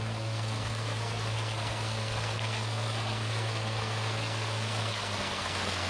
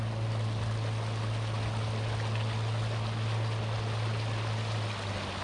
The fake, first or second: first